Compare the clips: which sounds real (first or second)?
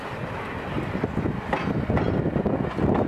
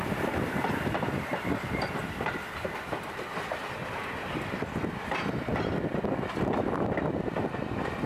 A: first